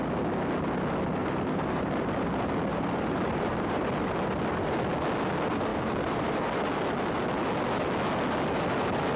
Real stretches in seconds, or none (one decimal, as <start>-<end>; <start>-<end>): 0.0-1.2; 2.3-2.7; 3.8-5.7; 6.4-9.2